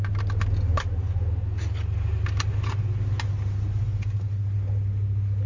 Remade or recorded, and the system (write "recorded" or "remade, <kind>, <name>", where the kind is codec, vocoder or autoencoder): recorded